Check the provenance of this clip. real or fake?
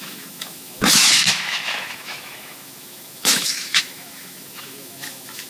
fake